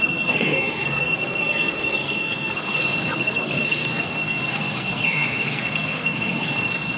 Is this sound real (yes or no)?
no